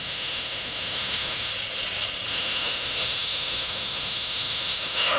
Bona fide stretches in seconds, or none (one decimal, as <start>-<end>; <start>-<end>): 1.5-2.3